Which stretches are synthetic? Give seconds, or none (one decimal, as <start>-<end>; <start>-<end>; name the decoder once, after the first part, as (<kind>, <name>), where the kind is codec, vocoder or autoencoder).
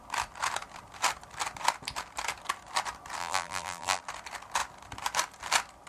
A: 3.2-4.0 (vocoder, BigVGAN v2)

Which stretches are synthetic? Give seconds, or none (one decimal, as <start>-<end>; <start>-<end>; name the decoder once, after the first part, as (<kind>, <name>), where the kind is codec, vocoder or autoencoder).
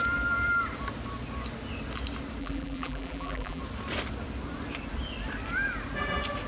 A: 2.4-3.6 (vocoder, BigVGAN v2)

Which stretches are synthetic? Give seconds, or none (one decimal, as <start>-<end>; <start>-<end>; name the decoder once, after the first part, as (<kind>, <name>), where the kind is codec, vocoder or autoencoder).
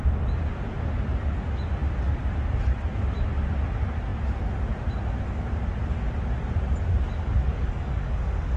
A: 7.4-8.6 (codec, DAC)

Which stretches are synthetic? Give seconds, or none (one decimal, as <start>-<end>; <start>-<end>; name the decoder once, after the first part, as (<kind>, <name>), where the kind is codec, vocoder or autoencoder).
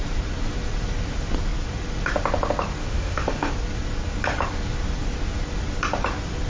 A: 2.8-3.5 (autoencoder, DAC-VAE)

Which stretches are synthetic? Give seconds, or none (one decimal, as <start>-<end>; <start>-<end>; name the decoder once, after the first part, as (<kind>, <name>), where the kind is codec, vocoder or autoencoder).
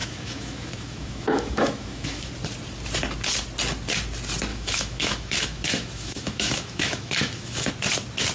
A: 0.0-2.3 (autoencoder, DAC-VAE); 4.5-7.7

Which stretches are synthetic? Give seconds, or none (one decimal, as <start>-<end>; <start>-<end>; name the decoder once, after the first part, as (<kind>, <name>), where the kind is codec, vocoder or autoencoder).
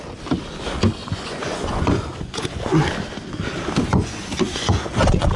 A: 1.0-2.8 (vocoder, Vocos); 3.9-5.4